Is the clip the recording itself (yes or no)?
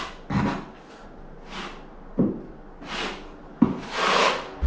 yes